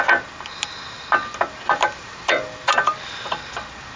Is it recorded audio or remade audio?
recorded